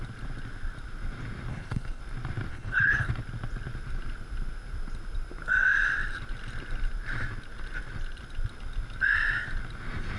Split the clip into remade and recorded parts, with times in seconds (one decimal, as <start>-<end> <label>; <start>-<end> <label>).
0.0-1.5 recorded; 1.5-2.0 remade; 2.0-2.5 recorded; 2.5-3.1 remade; 3.1-10.2 recorded